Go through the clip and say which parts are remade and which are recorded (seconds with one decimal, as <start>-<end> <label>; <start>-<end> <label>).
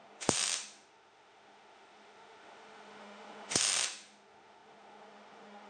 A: 0.0-5.7 remade